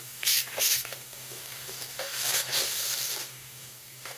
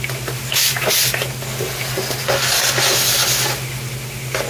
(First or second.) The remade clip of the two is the first